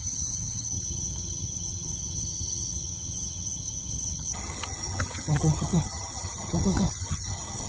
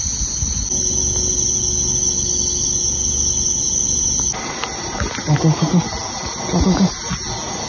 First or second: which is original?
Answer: second